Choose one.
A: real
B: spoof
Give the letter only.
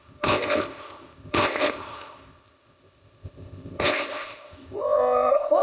B